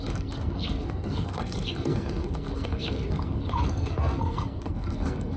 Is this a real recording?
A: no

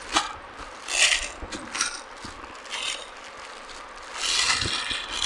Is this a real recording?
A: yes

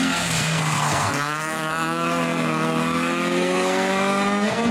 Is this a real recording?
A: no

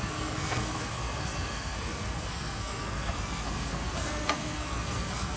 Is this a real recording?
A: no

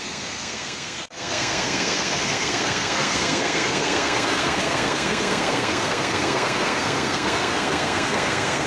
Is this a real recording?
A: no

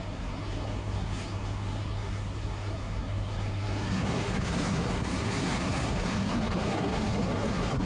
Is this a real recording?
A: no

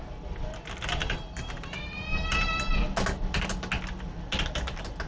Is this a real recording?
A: yes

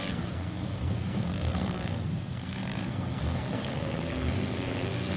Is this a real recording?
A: no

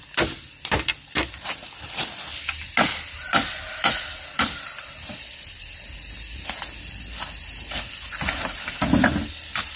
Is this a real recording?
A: yes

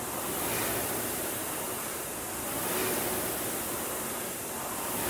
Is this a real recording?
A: yes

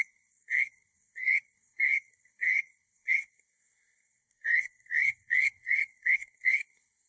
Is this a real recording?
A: no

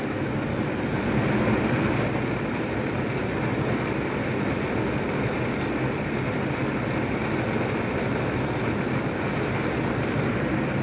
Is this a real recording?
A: yes